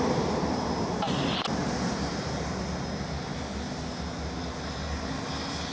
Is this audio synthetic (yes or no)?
no